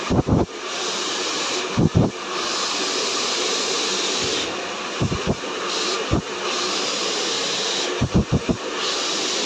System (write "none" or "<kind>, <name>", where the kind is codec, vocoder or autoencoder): none